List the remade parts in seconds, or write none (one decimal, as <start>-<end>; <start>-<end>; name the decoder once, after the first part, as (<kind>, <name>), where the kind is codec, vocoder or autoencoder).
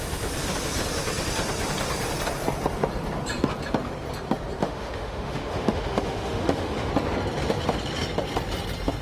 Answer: 4.6-6.9 (autoencoder, DAC-VAE)